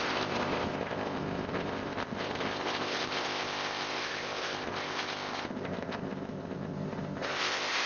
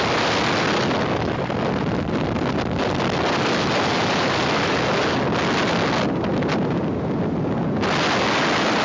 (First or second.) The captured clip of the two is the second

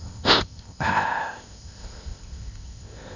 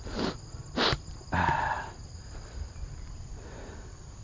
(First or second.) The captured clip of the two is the second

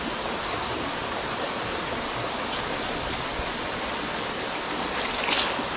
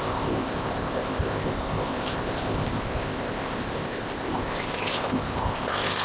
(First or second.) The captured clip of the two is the first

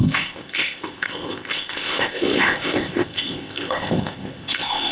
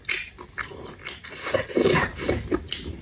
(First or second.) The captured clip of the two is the second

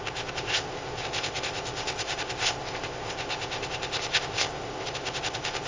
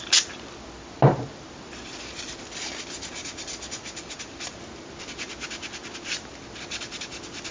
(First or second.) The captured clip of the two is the second